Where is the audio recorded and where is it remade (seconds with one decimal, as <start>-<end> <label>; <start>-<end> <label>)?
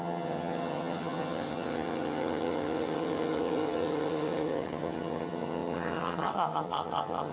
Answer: 0.0-7.3 remade